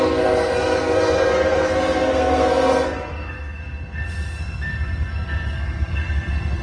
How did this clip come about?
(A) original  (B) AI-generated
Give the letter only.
B